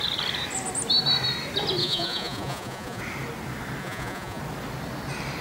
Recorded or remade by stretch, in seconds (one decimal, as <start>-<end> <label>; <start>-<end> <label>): 0.0-1.8 recorded; 1.8-3.0 remade; 3.0-3.8 recorded; 3.8-4.4 remade; 4.4-5.4 recorded

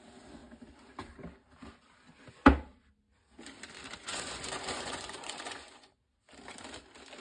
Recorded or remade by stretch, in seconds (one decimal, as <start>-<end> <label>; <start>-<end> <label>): 0.0-4.0 recorded; 4.0-5.9 remade; 5.9-7.2 recorded

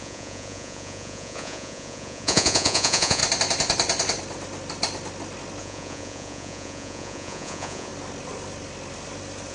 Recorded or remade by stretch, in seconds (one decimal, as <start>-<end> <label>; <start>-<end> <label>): 0.0-3.2 remade; 3.2-5.6 recorded; 5.6-7.9 remade; 7.9-9.5 recorded

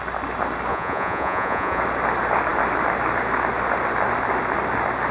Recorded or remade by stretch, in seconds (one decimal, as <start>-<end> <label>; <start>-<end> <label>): 0.0-0.7 recorded; 0.7-1.8 remade; 1.8-5.1 recorded

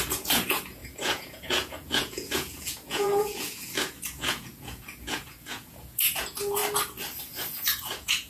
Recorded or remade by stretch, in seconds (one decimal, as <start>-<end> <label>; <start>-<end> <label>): 0.0-6.6 remade; 6.6-7.2 recorded; 7.2-8.3 remade

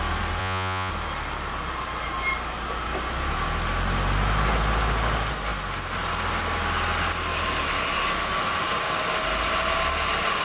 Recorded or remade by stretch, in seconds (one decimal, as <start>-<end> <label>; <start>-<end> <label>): 0.0-0.4 recorded; 0.4-0.9 remade; 0.9-10.4 recorded

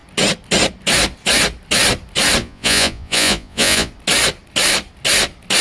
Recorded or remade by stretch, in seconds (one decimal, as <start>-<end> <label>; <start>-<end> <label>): 0.0-2.4 recorded; 2.4-3.9 remade; 3.9-5.6 recorded

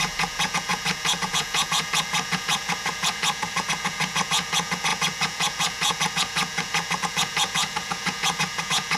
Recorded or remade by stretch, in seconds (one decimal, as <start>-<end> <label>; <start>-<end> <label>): 0.0-9.0 remade